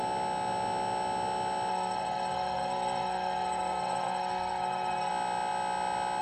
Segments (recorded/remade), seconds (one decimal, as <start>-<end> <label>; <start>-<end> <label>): 0.0-1.7 recorded; 1.7-5.1 remade; 5.1-6.2 recorded

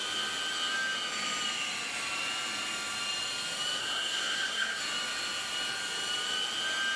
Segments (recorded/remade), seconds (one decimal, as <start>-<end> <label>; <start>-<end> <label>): 0.0-3.8 recorded; 3.8-4.8 remade; 4.8-7.0 recorded

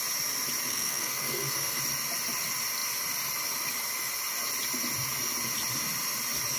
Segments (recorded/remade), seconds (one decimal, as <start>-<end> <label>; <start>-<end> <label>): 0.0-0.7 recorded; 0.7-1.8 remade; 1.8-6.6 recorded

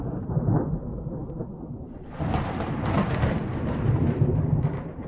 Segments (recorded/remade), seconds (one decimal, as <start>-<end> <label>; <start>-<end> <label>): 0.0-5.1 recorded

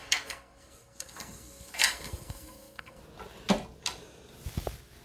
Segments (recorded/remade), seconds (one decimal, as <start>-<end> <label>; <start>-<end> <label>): 0.0-3.0 remade; 3.0-5.0 recorded

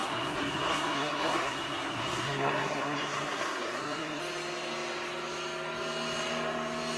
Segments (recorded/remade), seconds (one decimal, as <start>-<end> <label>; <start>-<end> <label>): 0.0-4.2 remade; 4.2-7.0 recorded

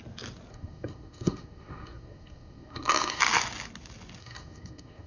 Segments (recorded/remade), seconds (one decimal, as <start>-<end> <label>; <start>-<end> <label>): 0.0-0.5 recorded; 0.5-3.2 remade; 3.2-4.2 recorded; 4.2-5.1 remade